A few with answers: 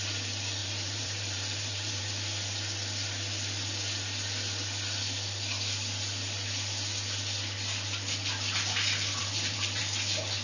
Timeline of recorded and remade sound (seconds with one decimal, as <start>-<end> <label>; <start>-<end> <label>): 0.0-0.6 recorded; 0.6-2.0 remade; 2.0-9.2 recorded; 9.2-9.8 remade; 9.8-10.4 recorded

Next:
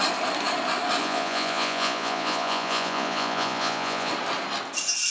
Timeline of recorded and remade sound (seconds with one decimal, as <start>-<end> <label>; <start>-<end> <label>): 0.0-1.0 recorded; 1.0-4.1 remade; 4.1-5.1 recorded

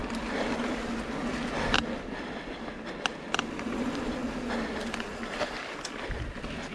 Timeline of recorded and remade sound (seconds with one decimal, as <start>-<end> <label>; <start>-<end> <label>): 0.0-6.7 recorded